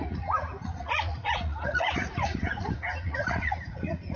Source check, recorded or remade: remade